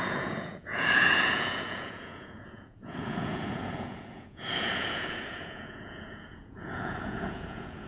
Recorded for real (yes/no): no